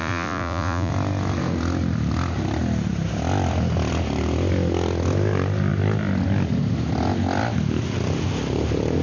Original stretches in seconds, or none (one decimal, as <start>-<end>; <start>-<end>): 0.9-9.0